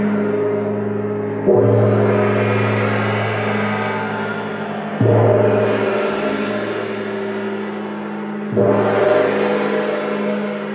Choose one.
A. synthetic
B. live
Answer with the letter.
B